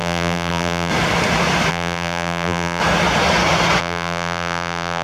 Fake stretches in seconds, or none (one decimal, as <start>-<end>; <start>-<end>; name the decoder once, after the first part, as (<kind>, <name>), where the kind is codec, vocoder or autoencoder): 0.0-0.9 (vocoder, BigVGAN v2); 1.7-2.8; 3.8-5.0